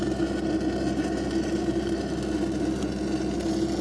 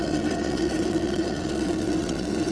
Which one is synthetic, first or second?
second